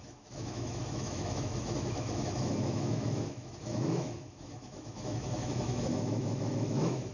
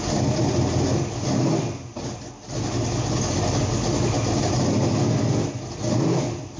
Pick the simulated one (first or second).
first